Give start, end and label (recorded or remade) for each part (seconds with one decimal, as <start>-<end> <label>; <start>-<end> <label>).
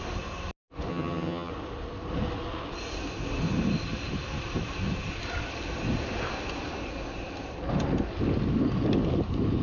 0.0-0.9 recorded; 0.9-1.5 remade; 1.5-9.6 recorded